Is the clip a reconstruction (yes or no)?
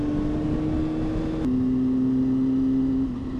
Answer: no